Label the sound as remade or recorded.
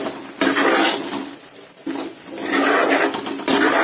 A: recorded